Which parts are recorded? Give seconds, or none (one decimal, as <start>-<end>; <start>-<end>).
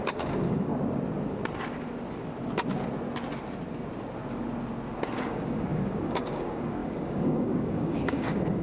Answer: 0.7-5.3